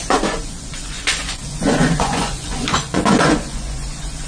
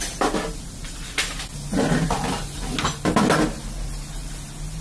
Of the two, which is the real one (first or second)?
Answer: second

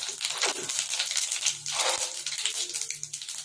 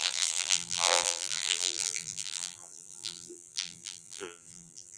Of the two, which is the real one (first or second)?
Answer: first